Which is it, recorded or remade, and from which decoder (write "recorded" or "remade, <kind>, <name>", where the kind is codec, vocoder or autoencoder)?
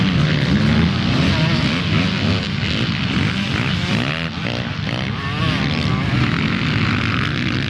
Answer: recorded